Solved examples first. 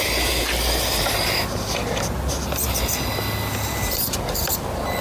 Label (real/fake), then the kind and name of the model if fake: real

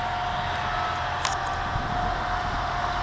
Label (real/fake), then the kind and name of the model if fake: real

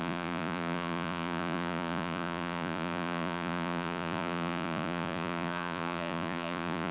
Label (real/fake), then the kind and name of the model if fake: fake, vocoder, Vocos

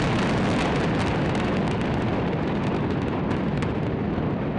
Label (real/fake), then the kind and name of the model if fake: real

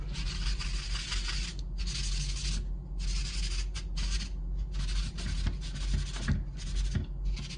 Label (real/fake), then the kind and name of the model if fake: real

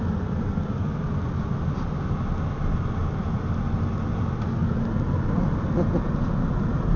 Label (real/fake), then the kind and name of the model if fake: real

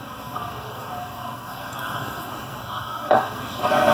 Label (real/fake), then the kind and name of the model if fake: fake, codec, SNAC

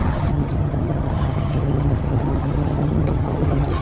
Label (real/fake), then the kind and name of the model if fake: fake, vocoder, HiFi-GAN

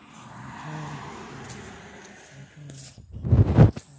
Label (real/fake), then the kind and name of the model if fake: real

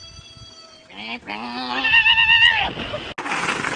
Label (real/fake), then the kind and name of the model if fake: real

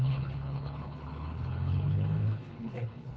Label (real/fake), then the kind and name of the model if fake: fake, codec, HILCodec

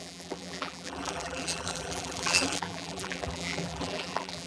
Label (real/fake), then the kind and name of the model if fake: fake, vocoder, BigVGAN v2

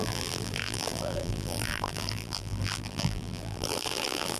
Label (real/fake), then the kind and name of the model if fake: fake, vocoder, BigVGAN v2